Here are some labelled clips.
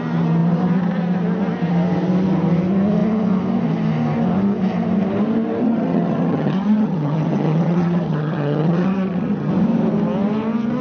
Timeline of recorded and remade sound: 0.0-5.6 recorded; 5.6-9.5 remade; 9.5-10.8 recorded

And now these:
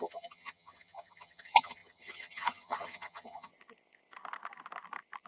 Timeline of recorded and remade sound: 0.0-3.5 remade; 3.5-5.3 recorded